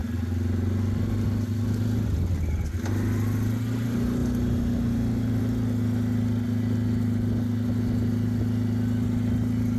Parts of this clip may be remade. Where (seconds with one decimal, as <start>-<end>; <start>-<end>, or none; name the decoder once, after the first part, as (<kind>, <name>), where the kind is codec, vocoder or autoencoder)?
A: none